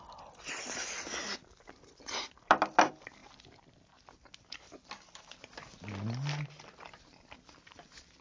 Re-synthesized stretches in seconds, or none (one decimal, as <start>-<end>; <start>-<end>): none